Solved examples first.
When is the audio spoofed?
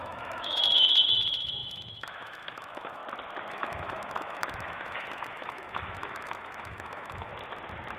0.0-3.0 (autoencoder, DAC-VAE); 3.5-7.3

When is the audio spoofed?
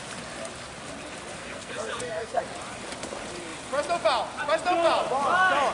1.4-2.4 (codec, SNAC)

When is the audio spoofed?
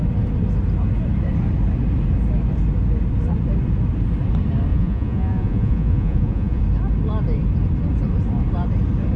4.7-6.6 (vocoder, Vocos)